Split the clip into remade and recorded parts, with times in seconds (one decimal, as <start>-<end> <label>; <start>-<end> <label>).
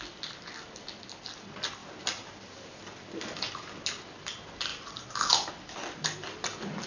0.0-1.8 recorded; 1.8-2.7 remade; 2.7-6.9 recorded